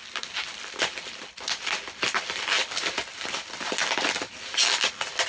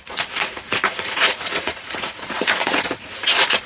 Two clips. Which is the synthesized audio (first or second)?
second